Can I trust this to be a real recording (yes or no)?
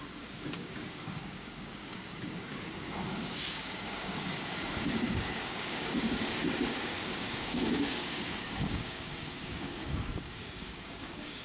no